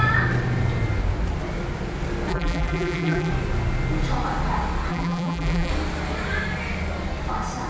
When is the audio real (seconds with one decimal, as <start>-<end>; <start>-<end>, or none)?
0.0-2.3; 3.3-4.9; 5.7-7.7

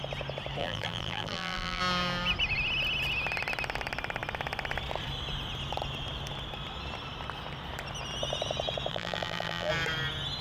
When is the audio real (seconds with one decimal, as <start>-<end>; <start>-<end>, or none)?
0.0-0.6; 1.8-8.9; 9.7-10.4

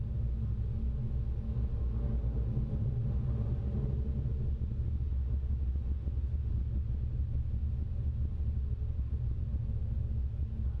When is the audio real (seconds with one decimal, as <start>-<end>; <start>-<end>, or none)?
0.0-10.8

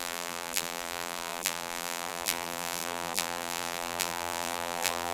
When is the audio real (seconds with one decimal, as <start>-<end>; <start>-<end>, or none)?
none